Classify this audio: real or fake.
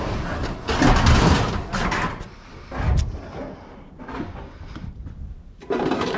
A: real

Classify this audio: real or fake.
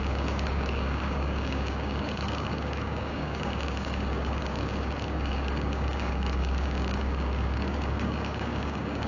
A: fake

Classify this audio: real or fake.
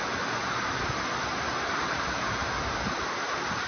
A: real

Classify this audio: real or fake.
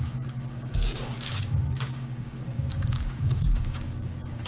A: fake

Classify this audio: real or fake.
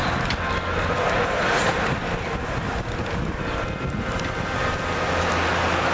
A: real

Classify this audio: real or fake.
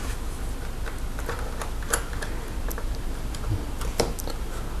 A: real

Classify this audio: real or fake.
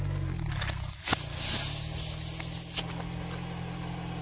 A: real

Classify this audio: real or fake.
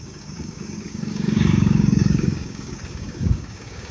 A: fake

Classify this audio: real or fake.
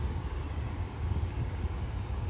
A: fake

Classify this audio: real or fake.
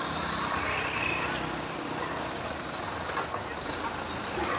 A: real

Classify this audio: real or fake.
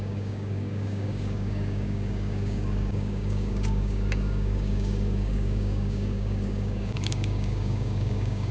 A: fake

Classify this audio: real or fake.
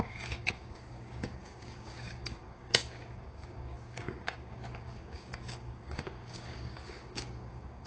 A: fake